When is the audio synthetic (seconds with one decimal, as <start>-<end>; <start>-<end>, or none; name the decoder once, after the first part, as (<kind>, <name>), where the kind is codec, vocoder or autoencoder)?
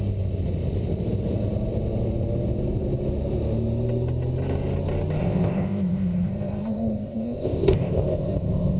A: 5.2-8.8 (codec, ZipCodec)